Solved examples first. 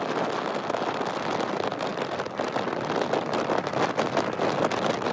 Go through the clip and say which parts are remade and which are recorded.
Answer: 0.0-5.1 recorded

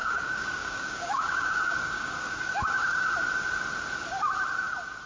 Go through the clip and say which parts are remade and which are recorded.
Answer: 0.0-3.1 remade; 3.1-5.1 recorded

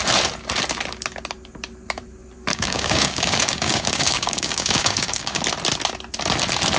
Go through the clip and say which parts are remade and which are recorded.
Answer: 0.0-2.5 recorded; 2.5-5.4 remade; 5.4-6.8 recorded